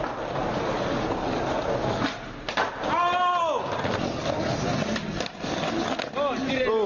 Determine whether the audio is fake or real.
real